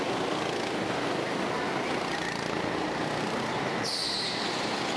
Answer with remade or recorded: remade